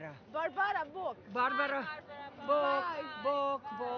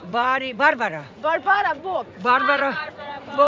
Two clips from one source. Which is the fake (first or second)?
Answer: second